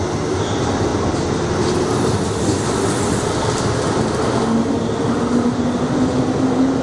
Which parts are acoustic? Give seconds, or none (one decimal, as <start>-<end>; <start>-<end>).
0.0-6.8